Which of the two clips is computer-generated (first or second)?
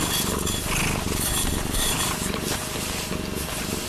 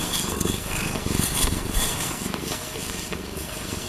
second